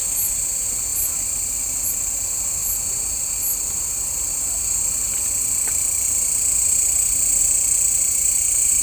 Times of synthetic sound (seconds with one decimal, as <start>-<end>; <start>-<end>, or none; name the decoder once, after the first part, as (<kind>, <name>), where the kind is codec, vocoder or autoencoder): none